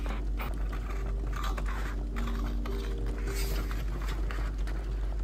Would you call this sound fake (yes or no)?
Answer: no